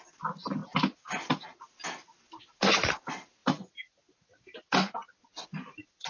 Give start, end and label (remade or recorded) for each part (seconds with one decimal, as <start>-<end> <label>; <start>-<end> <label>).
0.0-6.1 recorded